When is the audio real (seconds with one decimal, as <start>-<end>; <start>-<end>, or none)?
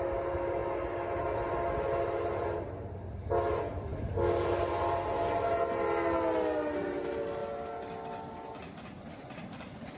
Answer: 0.0-10.0